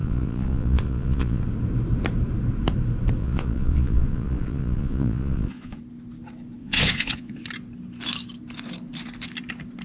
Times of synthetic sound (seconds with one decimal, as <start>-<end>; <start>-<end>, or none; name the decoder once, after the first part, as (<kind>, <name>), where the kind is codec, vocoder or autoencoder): 0.0-1.4 (vocoder, Vocos); 3.2-5.8; 6.6-7.4